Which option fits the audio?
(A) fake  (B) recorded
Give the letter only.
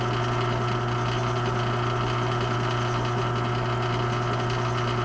B